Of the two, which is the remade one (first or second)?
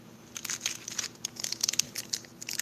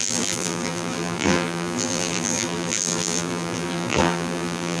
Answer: second